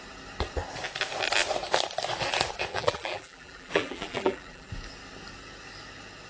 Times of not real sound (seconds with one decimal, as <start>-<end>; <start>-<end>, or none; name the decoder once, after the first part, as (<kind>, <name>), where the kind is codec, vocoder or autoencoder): 2.7-4.7 (vocoder, BigVGAN v2)